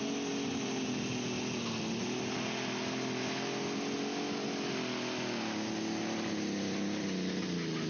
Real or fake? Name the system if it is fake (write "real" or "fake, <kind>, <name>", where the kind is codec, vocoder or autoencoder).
real